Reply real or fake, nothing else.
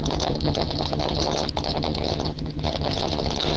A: fake